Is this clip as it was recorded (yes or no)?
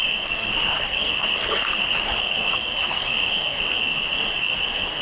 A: no